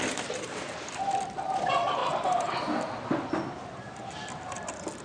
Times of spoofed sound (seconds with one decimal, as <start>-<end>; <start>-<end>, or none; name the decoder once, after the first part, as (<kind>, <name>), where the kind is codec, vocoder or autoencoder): none